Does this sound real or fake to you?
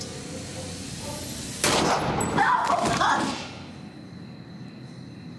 real